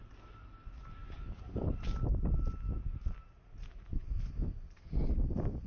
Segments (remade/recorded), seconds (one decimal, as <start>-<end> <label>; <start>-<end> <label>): 0.0-1.0 recorded; 1.0-1.8 remade; 1.8-5.7 recorded